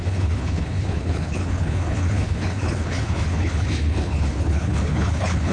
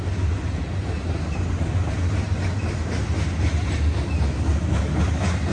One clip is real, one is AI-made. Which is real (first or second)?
second